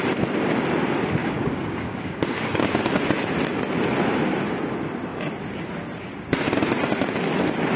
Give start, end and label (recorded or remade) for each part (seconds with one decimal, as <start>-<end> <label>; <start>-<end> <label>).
0.0-1.2 recorded; 1.2-2.8 remade; 2.8-7.8 recorded